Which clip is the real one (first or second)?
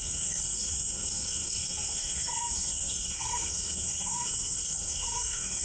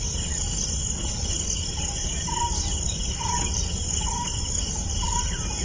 second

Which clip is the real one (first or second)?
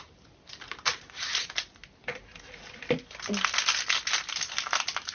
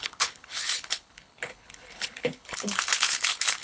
first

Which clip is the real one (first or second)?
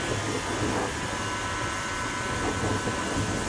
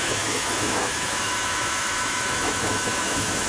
first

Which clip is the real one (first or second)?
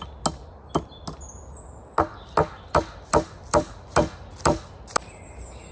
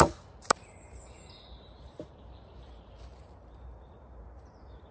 first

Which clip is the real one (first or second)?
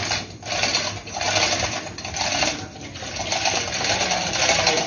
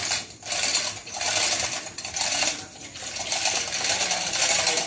first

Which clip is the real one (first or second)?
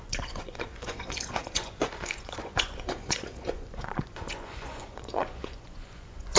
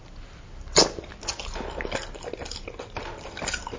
second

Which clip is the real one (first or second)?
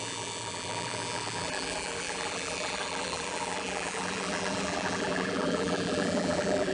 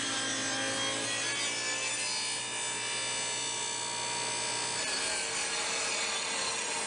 second